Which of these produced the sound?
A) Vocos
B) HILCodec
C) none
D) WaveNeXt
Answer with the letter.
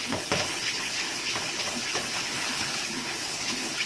B